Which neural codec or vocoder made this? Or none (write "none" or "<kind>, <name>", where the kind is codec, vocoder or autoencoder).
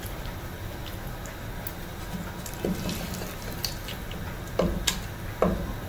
none